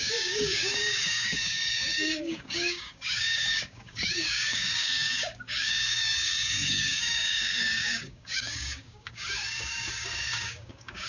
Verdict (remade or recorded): remade